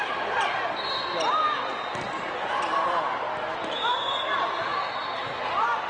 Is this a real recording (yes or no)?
yes